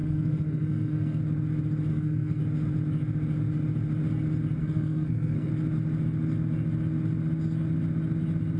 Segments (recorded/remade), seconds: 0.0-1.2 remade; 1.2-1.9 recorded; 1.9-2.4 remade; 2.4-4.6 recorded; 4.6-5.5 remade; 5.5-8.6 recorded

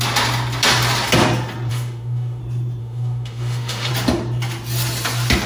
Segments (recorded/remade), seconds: 0.0-1.7 recorded; 1.7-2.4 remade; 2.4-2.8 recorded; 2.8-3.9 remade; 3.9-5.5 recorded

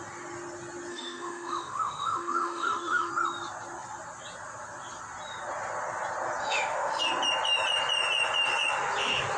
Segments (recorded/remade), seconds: 0.0-0.9 recorded; 0.9-3.1 remade; 3.1-6.4 recorded; 6.4-7.0 remade; 7.0-9.4 recorded

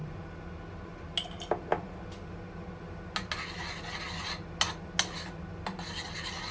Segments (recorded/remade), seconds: 0.0-6.5 recorded

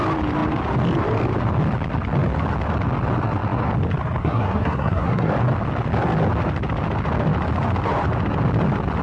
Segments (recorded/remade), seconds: 0.0-4.2 recorded; 4.2-5.3 remade; 5.3-9.0 recorded

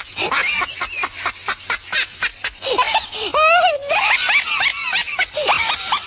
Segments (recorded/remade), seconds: 0.0-6.1 recorded

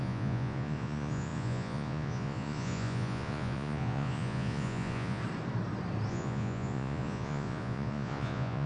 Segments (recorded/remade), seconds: 0.0-5.2 remade; 5.2-6.1 recorded; 6.1-8.7 remade

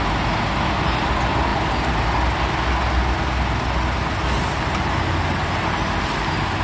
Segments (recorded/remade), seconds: 0.0-6.6 recorded